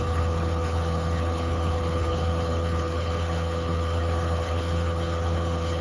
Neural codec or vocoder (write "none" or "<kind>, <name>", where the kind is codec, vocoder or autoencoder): codec, HILCodec